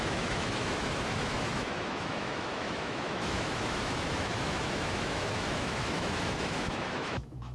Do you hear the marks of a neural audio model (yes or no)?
yes